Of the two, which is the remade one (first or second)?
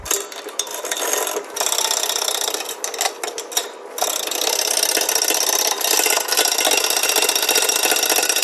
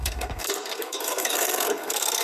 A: second